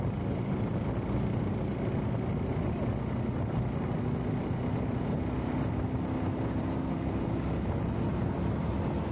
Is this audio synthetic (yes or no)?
no